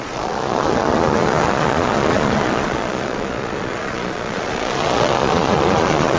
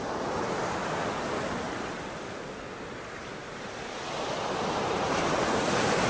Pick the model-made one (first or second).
first